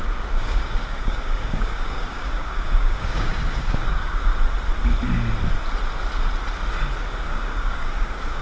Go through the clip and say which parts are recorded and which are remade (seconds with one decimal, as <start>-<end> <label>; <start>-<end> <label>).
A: 0.0-4.3 remade; 4.3-7.0 recorded; 7.0-8.4 remade